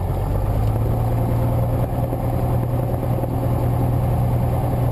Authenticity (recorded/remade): recorded